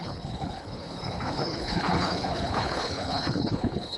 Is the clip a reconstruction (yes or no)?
yes